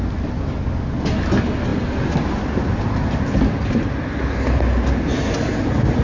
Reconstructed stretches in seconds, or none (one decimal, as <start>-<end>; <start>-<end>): none